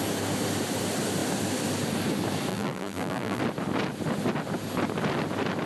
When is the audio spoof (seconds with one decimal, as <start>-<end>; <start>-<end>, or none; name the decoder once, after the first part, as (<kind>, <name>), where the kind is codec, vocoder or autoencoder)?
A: 2.5-3.4 (vocoder, BigVGAN v2)